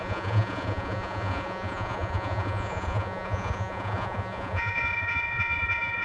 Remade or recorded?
remade